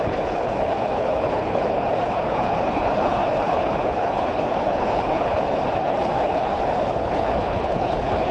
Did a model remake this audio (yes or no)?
yes